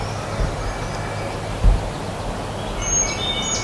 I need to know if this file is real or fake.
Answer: real